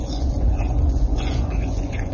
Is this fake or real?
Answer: fake